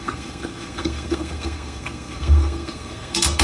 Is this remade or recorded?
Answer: remade